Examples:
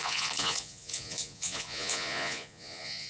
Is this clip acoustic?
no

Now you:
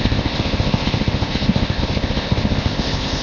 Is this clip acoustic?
no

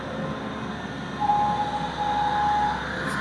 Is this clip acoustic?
yes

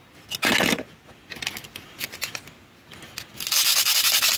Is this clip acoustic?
yes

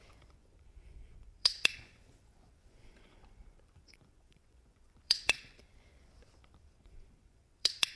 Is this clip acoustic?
no